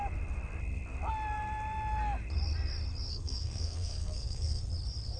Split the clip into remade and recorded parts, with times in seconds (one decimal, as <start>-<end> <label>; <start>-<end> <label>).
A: 0.0-3.1 recorded; 3.1-4.6 remade; 4.6-5.2 recorded